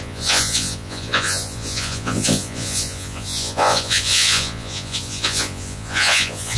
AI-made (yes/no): yes